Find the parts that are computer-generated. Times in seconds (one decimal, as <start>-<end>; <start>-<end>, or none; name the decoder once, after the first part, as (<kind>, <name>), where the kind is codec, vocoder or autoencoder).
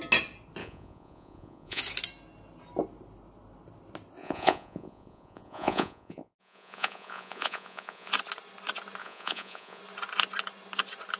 0.6-1.8 (vocoder, Vocos); 4.2-8.1; 9.0-9.8